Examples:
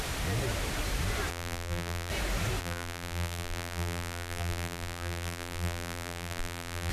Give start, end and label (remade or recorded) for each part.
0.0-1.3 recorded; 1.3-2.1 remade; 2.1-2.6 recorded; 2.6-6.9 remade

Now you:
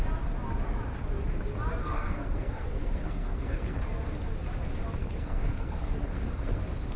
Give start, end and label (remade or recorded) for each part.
0.0-1.8 recorded; 1.8-3.8 remade; 3.8-5.0 recorded; 5.0-6.6 remade; 6.6-7.0 recorded

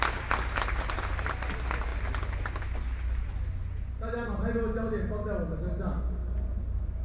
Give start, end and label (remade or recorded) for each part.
0.0-7.0 recorded

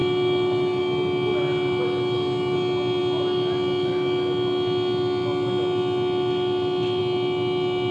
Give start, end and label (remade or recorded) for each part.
0.0-7.9 recorded

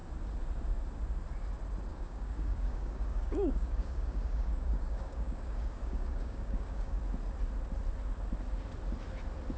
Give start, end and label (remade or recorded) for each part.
0.0-1.9 recorded; 1.9-7.0 remade; 7.0-9.6 recorded

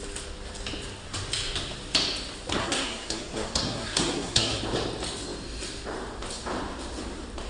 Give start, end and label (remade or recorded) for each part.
0.0-2.6 recorded; 2.6-4.6 remade; 4.6-7.5 recorded

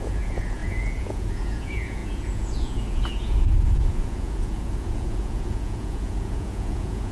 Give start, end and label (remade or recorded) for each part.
0.0-7.1 remade